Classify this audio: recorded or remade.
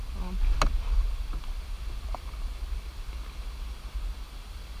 recorded